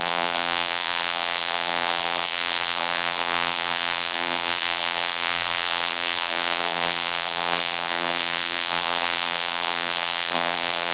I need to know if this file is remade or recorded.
remade